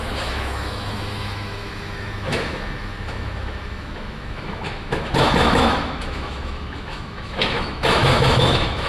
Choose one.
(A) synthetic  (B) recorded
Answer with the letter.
A